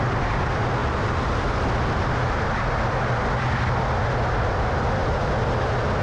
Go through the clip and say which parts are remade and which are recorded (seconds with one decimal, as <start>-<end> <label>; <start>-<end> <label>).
0.0-6.0 recorded